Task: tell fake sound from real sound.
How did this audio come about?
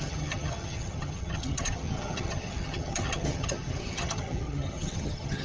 fake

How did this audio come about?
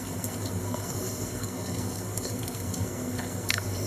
fake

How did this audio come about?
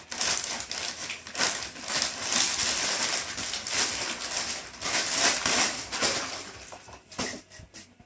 real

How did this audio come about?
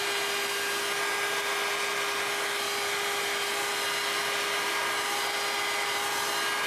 real